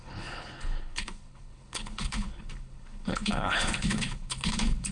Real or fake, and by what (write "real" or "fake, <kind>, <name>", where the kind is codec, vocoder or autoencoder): fake, codec, HILCodec